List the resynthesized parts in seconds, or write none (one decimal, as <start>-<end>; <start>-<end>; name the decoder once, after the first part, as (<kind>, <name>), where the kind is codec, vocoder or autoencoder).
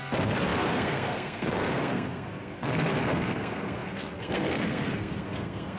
0.0-5.8 (codec, SNAC)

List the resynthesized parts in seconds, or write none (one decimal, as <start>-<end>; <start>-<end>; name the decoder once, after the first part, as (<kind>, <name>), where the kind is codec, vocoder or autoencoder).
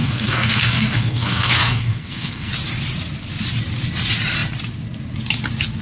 0.0-2.5 (codec, SNAC)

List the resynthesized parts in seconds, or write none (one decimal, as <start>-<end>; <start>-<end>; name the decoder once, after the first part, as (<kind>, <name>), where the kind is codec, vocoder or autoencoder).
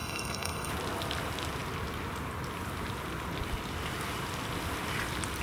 0.0-0.7 (codec, SNAC)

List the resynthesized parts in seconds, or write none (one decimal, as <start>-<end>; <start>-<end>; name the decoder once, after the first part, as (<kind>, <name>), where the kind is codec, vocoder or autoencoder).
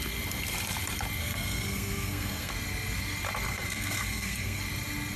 1.2-2.5 (codec, SNAC); 3.5-4.6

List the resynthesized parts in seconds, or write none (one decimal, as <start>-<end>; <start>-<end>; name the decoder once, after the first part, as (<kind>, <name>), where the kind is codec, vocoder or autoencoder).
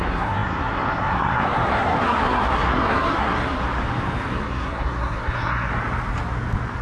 0.0-3.6 (codec, SNAC); 4.3-5.7